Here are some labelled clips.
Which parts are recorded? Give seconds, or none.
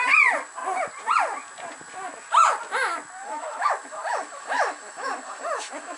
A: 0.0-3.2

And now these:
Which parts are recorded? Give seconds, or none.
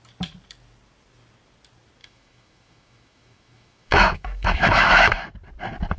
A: 0.0-2.0; 5.3-6.0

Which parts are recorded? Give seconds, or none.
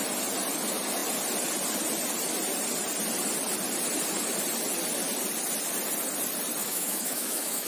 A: 0.0-6.6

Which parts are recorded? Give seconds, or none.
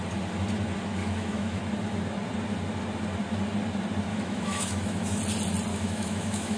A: 0.0-1.0; 1.6-4.1; 5.2-5.7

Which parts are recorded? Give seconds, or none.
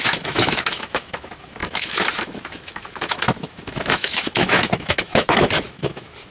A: none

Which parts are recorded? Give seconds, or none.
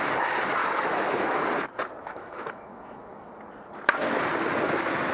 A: 0.0-0.6; 1.4-2.0; 3.3-5.1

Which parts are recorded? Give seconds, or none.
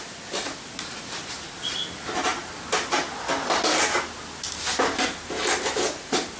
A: 0.0-6.4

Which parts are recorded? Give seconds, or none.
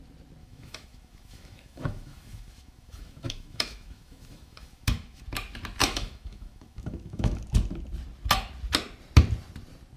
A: 0.0-0.4; 5.2-5.8; 7.4-10.0